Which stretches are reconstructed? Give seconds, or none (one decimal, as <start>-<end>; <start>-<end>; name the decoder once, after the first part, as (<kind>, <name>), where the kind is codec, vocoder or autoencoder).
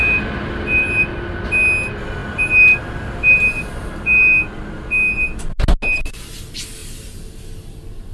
none